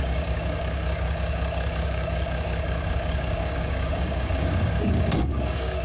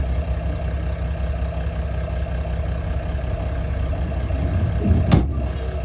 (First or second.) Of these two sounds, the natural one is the second